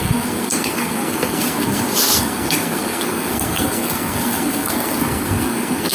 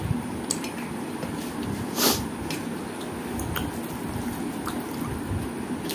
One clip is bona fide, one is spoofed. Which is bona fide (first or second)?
second